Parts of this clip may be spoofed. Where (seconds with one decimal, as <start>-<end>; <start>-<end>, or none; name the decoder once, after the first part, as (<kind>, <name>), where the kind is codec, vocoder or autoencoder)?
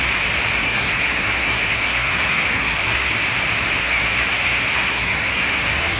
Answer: 0.6-3.1 (codec, SNAC); 3.8-6.0